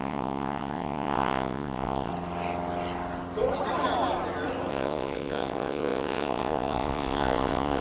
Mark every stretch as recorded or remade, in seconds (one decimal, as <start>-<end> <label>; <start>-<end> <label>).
0.0-2.1 remade; 2.1-4.7 recorded; 4.7-7.8 remade

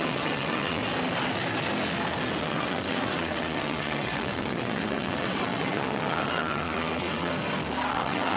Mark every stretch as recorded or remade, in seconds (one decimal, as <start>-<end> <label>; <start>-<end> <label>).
0.0-0.8 remade; 0.8-2.4 recorded; 2.4-7.3 remade; 7.3-7.9 recorded; 7.9-8.4 remade

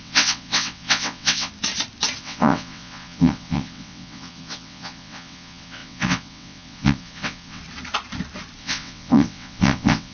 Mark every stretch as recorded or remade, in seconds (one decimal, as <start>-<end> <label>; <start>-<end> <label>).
0.0-1.5 remade; 1.5-2.2 recorded; 2.2-7.6 remade; 7.6-8.6 recorded; 8.6-10.1 remade

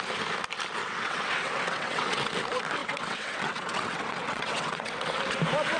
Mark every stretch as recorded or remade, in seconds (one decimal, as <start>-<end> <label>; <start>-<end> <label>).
0.0-0.8 recorded; 0.8-2.3 remade; 2.3-2.8 recorded; 2.8-5.2 remade; 5.2-5.8 recorded